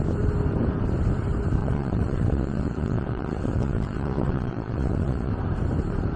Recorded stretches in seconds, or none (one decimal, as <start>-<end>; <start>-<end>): 0.0-1.6; 5.3-6.2